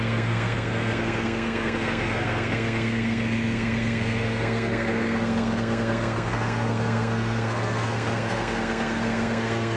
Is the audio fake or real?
fake